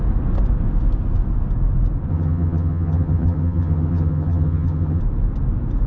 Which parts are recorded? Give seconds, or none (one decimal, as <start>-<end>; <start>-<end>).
0.0-2.1; 5.0-5.9

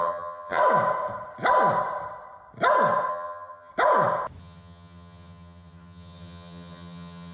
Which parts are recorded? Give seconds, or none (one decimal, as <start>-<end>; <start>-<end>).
0.6-3.1; 3.7-4.4